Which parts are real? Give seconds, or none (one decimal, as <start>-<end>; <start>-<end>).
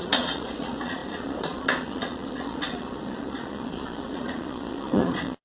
none